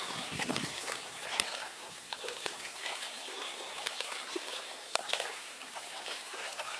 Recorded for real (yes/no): no